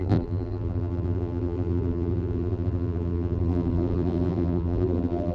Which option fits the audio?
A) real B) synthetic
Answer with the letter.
B